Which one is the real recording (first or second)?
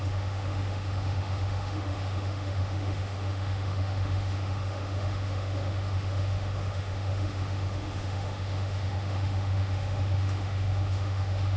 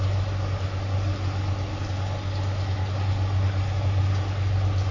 second